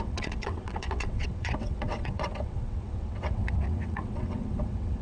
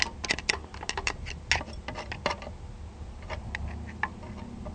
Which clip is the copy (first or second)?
first